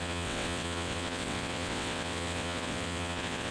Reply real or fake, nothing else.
fake